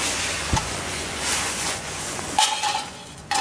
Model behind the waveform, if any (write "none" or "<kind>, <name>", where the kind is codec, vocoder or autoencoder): vocoder, Vocos